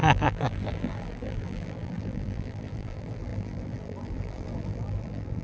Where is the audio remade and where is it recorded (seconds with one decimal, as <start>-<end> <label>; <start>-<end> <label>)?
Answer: 0.0-5.4 remade

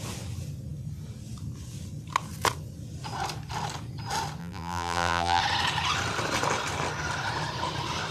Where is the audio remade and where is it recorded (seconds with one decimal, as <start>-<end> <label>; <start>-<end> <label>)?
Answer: 0.0-4.4 recorded; 4.4-5.4 remade; 5.4-8.1 recorded

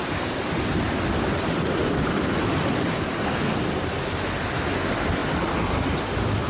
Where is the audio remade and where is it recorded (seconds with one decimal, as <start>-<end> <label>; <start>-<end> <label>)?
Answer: 0.0-5.2 remade; 5.2-6.0 recorded; 6.0-6.5 remade

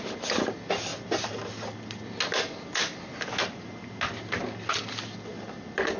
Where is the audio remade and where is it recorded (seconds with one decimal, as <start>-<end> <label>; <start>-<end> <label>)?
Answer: 0.0-6.0 recorded

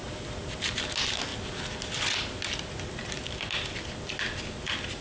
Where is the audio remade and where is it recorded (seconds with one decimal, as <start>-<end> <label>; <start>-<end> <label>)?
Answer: 0.0-0.9 remade; 0.9-5.0 recorded

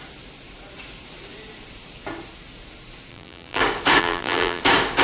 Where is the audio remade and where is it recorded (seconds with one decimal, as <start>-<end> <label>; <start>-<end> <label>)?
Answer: 0.0-3.1 recorded; 3.1-3.6 remade; 3.6-4.0 recorded; 4.0-4.6 remade; 4.6-5.0 recorded

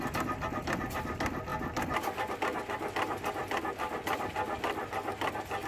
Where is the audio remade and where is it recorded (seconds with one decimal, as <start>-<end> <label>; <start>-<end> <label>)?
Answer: 0.0-5.7 recorded